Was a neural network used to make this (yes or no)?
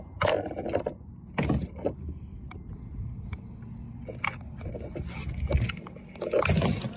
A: no